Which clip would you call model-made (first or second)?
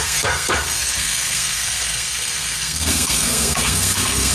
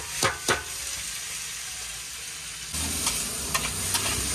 first